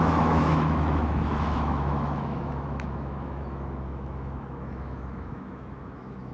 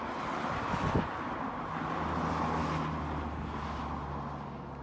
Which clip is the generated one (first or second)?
first